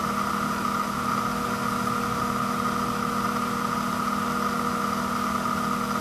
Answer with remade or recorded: recorded